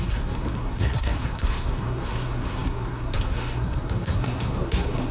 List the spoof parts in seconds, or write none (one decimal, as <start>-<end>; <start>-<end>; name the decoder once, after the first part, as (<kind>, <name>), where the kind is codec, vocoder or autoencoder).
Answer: 0.0-5.1 (codec, SNAC)